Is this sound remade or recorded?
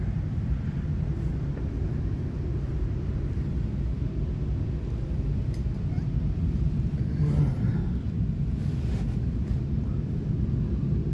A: recorded